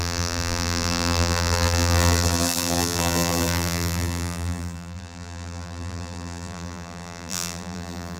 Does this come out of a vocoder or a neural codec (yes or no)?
yes